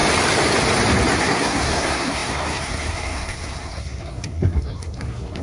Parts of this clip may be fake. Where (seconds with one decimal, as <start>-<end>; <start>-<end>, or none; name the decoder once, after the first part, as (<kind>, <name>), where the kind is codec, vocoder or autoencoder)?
1.2-5.4 (codec, SNAC)